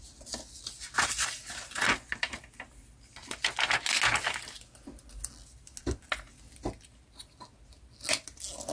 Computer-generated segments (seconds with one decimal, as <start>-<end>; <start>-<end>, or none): none